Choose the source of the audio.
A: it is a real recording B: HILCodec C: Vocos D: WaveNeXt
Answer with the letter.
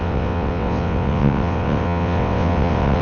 D